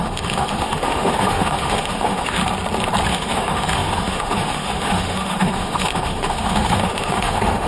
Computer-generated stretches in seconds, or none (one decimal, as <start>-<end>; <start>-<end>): 0.0-2.4; 3.1-7.7